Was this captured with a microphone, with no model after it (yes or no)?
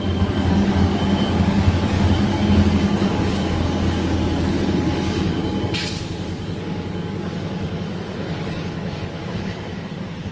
no